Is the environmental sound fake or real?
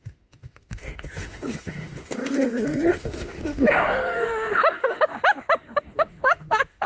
fake